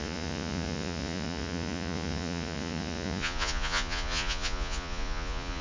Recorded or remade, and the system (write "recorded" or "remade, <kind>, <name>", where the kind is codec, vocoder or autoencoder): remade, vocoder, Vocos